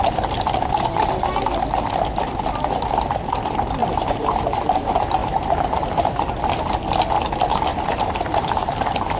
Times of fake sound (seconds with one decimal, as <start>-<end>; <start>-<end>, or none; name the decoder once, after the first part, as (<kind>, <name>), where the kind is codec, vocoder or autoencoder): 3.8-4.6 (vocoder, BigVGAN v2); 5.2-6.4; 7.7-9.2